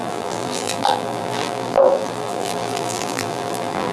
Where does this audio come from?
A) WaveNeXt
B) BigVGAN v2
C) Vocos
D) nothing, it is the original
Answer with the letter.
B